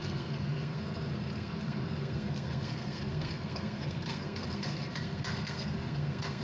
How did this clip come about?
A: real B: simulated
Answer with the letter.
B